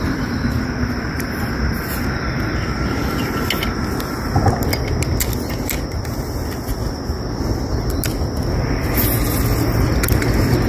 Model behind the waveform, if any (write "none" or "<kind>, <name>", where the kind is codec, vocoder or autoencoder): none